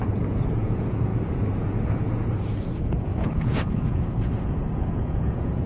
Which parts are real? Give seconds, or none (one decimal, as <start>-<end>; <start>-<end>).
none